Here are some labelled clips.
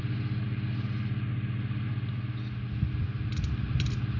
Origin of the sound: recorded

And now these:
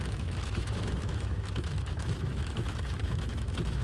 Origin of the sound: remade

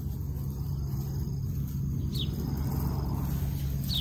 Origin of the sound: recorded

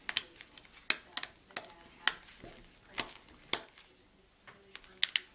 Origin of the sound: recorded